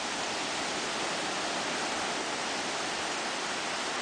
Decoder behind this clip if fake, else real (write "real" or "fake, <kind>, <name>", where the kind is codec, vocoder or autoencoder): real